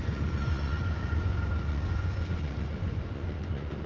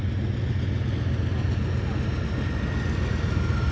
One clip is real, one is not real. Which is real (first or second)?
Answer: second